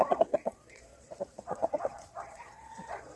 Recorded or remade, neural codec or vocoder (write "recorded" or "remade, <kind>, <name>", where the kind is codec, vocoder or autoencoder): remade, vocoder, Vocos